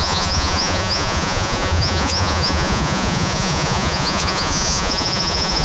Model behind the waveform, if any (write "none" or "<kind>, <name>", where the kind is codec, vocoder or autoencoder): vocoder, Vocos